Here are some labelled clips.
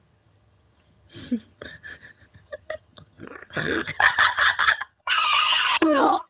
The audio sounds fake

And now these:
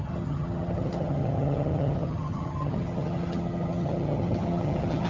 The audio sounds fake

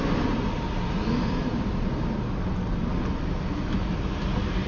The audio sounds real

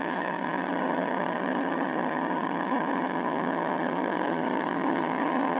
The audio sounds fake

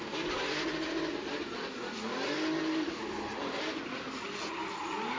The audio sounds real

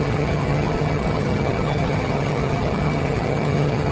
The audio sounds fake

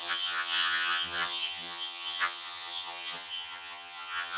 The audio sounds fake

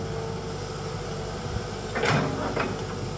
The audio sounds real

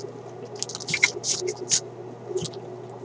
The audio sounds real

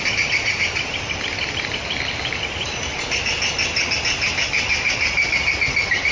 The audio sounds real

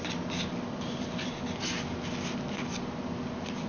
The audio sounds real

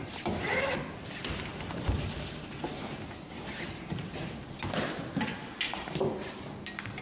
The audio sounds real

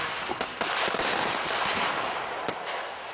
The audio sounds real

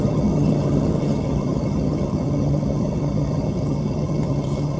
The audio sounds fake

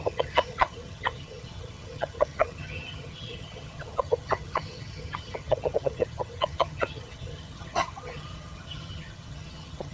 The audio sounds fake